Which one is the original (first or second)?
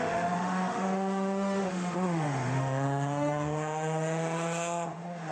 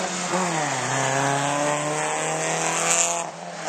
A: second